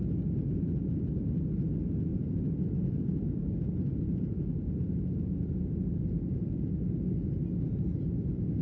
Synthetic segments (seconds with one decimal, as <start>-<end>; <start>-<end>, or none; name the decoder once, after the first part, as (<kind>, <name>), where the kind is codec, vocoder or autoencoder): none